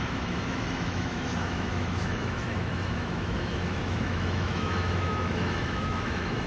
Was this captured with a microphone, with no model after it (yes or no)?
no